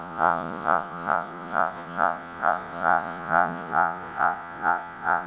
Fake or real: fake